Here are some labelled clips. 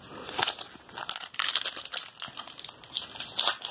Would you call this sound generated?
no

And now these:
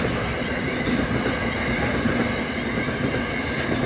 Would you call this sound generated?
no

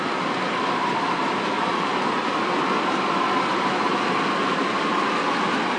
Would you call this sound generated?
yes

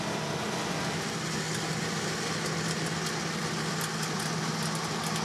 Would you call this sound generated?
no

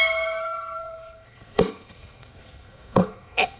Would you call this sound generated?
yes